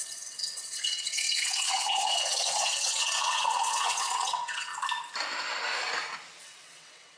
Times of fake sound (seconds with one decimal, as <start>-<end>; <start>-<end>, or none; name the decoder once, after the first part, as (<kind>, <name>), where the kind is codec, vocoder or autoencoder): 0.0-4.7 (vocoder, WaveNeXt); 6.4-7.2